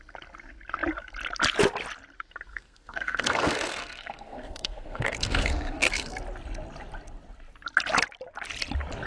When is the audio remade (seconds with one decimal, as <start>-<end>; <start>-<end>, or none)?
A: 2.5-6.2